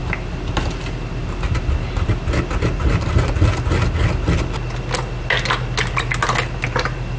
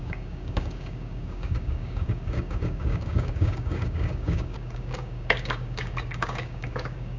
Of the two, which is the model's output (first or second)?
second